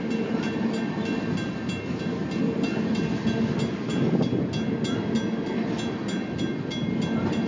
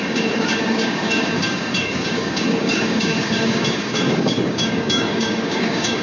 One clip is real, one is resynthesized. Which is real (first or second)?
first